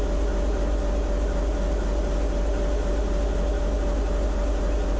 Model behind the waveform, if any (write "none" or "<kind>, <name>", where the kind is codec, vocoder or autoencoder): none